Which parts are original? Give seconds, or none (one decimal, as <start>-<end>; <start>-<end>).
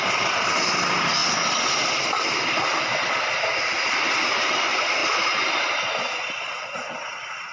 0.0-7.5